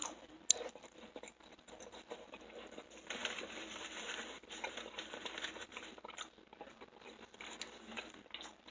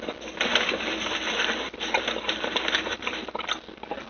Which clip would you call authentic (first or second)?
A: first